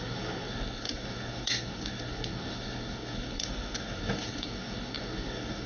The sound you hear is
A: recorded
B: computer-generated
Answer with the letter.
B